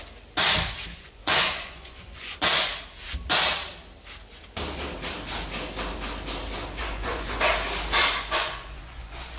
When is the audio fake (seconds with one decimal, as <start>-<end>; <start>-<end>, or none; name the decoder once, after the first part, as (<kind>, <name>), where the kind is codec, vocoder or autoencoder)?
0.9-2.7 (vocoder, Vocos); 6.8-7.5; 8.0-9.4